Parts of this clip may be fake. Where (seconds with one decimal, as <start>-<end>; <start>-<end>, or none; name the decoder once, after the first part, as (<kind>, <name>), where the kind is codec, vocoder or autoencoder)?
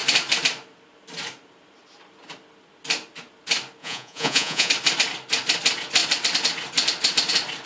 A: 3.8-4.7 (vocoder, Vocos)